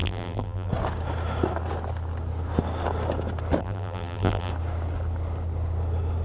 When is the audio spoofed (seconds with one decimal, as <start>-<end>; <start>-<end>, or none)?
0.0-0.7; 3.6-4.5